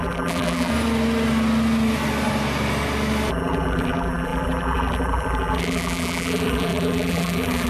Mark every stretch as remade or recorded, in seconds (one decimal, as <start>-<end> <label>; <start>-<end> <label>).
0.0-0.7 remade; 0.7-3.3 recorded; 3.3-7.7 remade